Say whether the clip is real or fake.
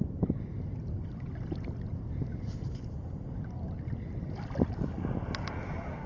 real